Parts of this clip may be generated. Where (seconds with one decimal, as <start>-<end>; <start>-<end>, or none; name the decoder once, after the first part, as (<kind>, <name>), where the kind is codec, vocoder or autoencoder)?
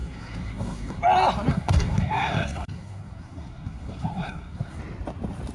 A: 0.0-1.0 (codec, SNAC); 1.5-4.8